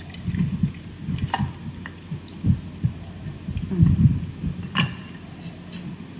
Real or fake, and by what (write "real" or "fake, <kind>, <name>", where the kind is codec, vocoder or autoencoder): real